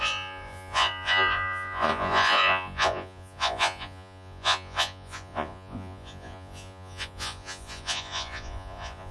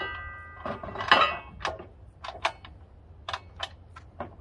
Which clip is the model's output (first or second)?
first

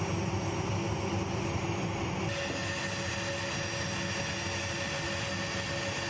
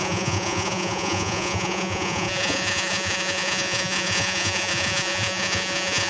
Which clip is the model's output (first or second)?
second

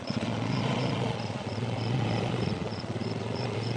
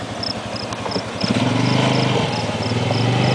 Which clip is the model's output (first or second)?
first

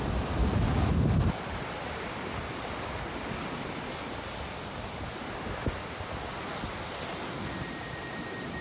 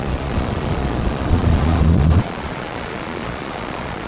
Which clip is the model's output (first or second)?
second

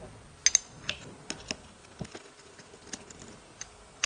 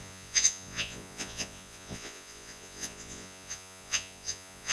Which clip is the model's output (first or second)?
second